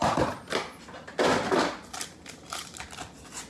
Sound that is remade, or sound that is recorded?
recorded